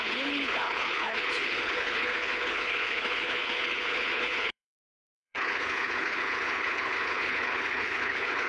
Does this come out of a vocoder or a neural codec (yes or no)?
yes